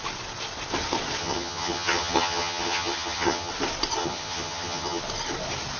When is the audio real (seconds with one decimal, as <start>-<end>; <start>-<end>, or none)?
0.0-1.2; 3.5-4.0; 5.0-5.8